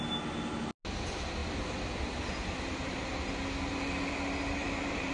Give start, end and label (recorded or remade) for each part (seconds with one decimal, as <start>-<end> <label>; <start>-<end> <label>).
0.0-4.6 recorded; 4.6-5.1 remade